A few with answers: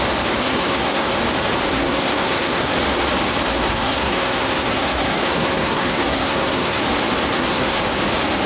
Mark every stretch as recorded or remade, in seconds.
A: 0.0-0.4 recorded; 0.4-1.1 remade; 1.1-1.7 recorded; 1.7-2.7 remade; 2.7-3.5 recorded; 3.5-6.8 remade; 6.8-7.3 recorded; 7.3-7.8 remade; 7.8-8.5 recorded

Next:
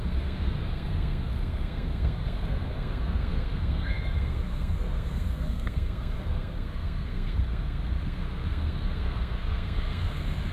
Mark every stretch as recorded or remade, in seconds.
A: 0.0-10.5 remade

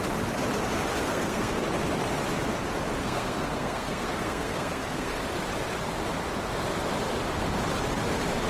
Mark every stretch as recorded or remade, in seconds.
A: 0.0-1.0 recorded; 1.0-1.6 remade; 1.6-3.0 recorded; 3.0-5.1 remade; 5.1-8.5 recorded

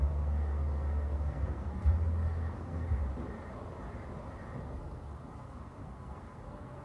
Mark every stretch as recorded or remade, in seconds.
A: 0.0-3.0 remade; 3.0-4.6 recorded; 4.6-6.8 remade

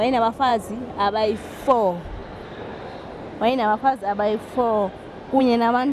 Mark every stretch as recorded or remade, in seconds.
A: 0.0-5.9 recorded

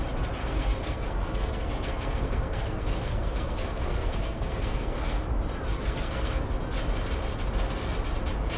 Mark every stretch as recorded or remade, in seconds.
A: 0.0-0.4 recorded; 0.4-5.2 remade; 5.2-5.7 recorded; 5.7-6.4 remade; 6.4-8.6 recorded

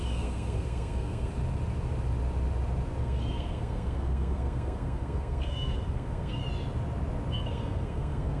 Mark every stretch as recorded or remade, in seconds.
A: 0.0-1.4 remade; 1.4-3.0 recorded; 3.0-6.4 remade; 6.4-7.3 recorded; 7.3-8.4 remade

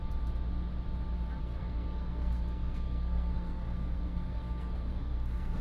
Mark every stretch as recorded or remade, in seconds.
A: 0.0-1.4 recorded; 1.4-5.6 remade